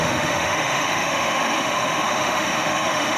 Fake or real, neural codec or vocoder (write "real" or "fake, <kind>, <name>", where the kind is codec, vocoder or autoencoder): fake, autoencoder, DAC-VAE